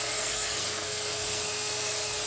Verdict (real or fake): fake